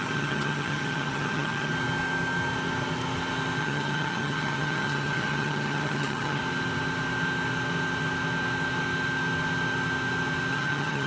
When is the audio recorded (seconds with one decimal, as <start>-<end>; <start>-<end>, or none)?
1.7-3.6; 6.4-10.5